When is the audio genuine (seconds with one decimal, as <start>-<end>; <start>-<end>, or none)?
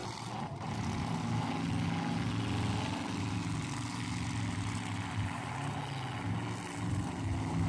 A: 1.0-7.7